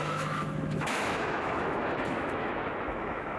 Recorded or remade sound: remade